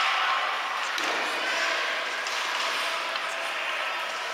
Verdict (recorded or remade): recorded